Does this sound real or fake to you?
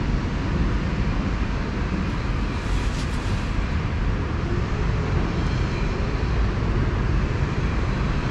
real